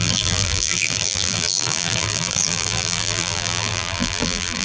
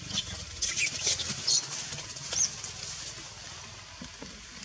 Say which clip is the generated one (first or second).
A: first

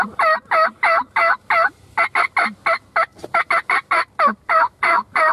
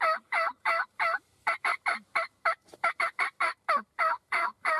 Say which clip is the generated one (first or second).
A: second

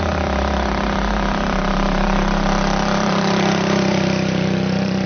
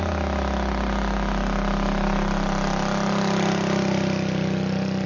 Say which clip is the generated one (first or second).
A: first